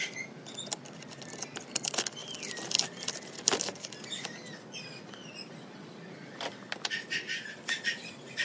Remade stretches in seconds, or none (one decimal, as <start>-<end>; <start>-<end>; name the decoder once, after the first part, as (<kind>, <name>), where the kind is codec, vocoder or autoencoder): 2.2-3.2 (vocoder, BigVGAN v2); 5.2-6.7